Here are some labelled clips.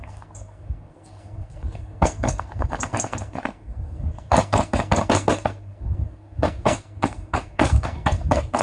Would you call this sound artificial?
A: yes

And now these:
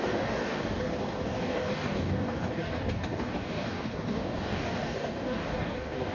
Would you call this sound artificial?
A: yes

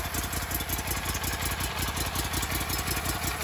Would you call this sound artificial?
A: no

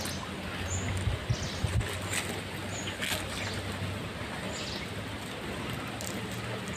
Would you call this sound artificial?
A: no